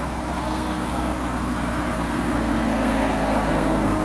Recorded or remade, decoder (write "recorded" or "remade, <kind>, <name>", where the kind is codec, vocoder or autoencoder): remade, codec, SNAC